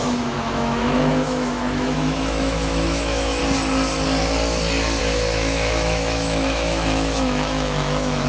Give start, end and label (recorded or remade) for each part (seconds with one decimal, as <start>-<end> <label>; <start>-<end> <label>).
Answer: 0.0-3.4 remade; 3.4-5.0 recorded; 5.0-8.3 remade